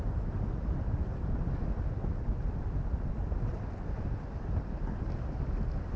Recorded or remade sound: recorded